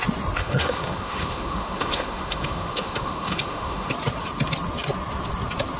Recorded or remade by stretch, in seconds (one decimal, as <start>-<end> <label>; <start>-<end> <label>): 0.0-0.4 recorded; 0.4-3.9 remade; 3.9-5.8 recorded